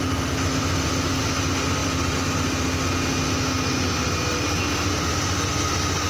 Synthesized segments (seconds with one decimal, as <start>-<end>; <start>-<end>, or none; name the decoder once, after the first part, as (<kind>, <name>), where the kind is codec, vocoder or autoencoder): none